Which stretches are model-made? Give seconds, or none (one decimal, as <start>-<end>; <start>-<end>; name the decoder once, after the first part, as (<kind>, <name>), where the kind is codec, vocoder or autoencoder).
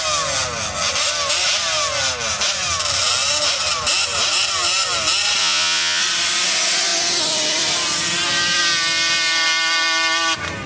5.4-6.0 (vocoder, Vocos)